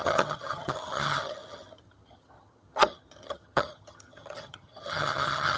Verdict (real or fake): fake